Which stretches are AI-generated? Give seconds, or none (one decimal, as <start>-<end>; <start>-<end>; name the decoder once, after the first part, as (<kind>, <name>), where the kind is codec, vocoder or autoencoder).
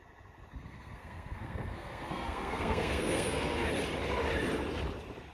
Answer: 0.5-3.7 (codec, SNAC)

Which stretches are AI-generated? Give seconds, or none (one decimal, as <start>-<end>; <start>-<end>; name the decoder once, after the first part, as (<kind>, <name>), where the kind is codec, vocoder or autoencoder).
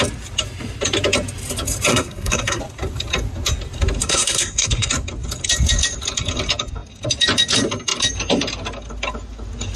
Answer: 1.9-2.6 (codec, SNAC); 4.0-4.9